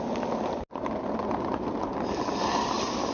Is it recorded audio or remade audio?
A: recorded